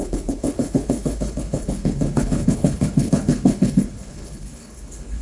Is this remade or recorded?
remade